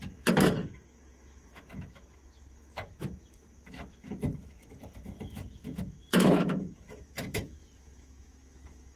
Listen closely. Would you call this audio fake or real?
fake